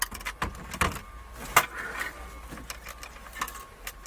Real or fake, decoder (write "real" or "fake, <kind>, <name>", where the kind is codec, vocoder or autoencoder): real